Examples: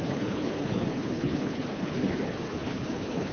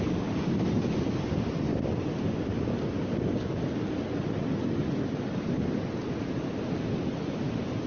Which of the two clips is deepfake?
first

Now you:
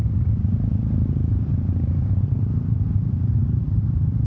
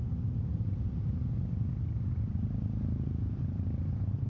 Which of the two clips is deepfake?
first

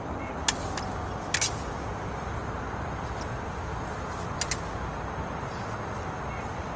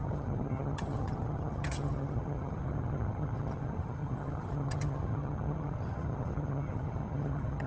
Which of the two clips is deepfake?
second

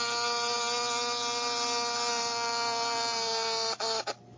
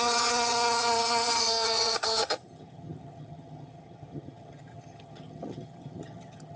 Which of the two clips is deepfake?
second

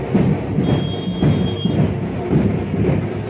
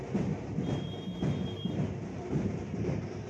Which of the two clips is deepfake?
second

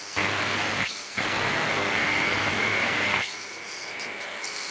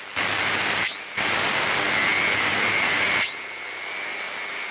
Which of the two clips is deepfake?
first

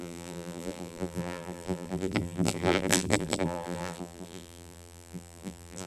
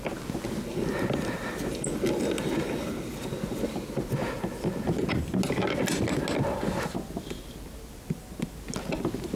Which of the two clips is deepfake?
first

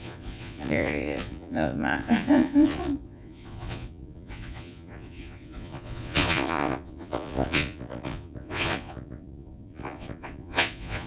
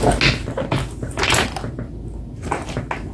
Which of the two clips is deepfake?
first